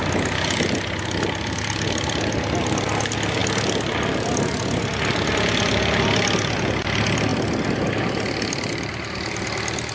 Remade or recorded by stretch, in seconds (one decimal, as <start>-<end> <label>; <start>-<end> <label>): 0.0-9.9 recorded